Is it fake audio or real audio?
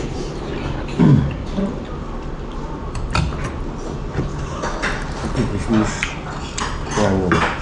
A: real